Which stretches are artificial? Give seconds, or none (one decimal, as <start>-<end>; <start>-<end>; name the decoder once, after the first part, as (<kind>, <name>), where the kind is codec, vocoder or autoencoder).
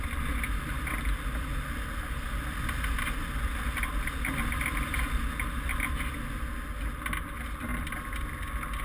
none